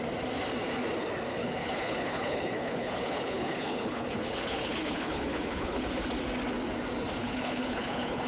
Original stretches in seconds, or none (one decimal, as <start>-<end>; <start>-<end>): 0.0-1.3; 5.8-7.2